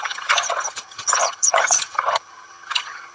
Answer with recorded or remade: remade